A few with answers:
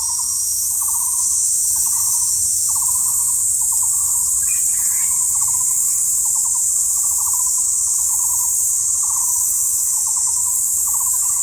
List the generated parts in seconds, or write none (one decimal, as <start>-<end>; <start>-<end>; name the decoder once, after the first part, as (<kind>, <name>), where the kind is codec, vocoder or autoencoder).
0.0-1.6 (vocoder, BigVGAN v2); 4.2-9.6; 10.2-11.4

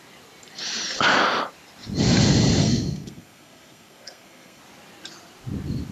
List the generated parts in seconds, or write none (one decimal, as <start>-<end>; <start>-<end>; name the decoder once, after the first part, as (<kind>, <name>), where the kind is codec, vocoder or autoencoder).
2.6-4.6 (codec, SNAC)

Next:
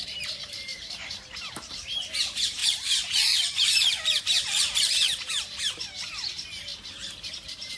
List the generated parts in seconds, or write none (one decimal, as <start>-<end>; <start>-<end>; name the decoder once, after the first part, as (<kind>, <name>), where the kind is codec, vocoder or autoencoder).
0.0-7.8 (vocoder, BigVGAN v2)

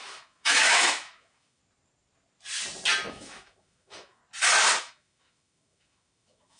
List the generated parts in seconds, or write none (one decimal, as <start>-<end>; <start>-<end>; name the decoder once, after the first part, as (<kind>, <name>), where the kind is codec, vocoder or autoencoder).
0.0-1.6 (autoencoder, DAC-VAE); 3.1-4.2; 4.8-6.6

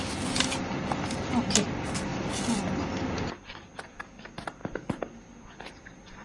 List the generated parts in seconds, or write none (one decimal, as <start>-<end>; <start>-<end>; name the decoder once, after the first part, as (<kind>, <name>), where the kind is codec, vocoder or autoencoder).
none

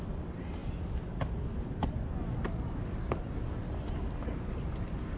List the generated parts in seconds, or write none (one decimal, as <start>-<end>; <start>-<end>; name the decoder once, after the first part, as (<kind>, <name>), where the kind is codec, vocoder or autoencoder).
none